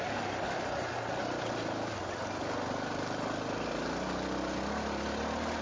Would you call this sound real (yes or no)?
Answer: yes